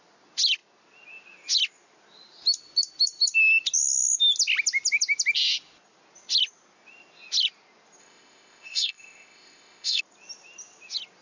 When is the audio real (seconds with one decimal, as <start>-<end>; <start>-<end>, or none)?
0.0-8.0; 10.0-11.2